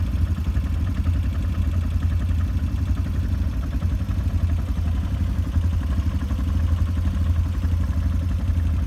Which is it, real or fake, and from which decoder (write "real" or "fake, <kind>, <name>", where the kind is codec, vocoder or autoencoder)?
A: real